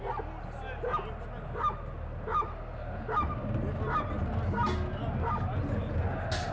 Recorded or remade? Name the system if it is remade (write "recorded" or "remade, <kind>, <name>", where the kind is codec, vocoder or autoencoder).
recorded